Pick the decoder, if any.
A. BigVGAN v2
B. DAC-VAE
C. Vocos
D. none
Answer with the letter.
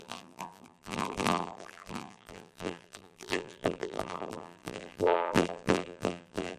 A